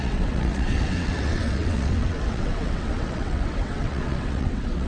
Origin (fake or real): fake